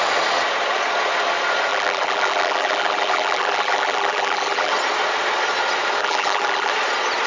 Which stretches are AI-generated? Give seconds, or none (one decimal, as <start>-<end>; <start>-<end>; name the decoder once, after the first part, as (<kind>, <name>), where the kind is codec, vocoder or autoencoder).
1.7-4.7 (vocoder, BigVGAN v2); 6.0-6.7

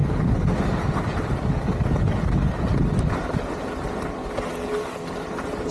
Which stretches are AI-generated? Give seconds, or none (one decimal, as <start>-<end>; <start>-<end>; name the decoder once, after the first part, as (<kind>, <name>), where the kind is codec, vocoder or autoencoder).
none

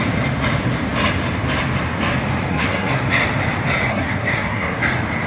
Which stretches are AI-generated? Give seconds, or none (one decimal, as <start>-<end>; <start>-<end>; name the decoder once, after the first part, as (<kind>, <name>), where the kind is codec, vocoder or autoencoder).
2.5-3.0 (codec, SNAC); 3.9-4.8

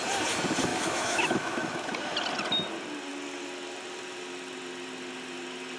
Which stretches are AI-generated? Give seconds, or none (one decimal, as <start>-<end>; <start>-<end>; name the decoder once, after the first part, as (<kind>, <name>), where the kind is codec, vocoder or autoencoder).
0.7-1.9 (autoencoder, DAC-VAE)

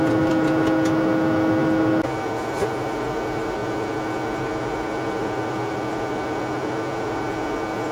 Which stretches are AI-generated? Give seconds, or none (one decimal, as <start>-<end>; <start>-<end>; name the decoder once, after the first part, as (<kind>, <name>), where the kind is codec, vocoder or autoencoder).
none

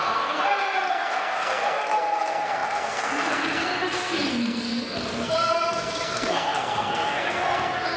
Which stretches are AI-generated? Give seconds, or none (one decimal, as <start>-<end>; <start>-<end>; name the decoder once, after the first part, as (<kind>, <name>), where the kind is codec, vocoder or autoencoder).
0.0-8.0 (codec, SNAC)